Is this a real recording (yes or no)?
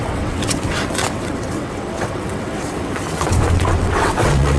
no